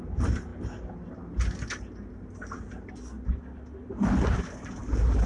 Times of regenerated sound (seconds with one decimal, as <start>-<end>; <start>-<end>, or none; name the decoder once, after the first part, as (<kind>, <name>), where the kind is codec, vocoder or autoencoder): none